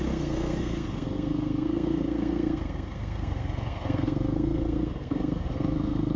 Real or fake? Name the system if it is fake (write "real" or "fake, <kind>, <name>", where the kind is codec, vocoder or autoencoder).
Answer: fake, codec, SNAC